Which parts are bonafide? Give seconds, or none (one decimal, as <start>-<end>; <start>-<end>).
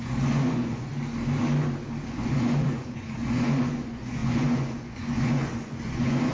0.9-2.1